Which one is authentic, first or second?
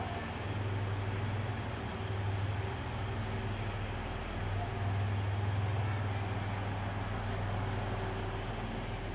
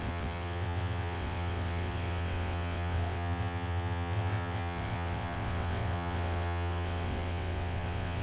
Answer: first